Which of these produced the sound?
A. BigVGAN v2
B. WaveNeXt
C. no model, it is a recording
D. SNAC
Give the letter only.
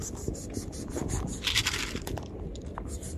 A